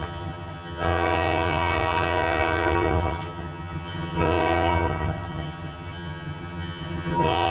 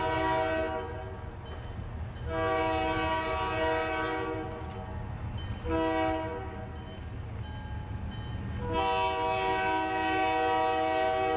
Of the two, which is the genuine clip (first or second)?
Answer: second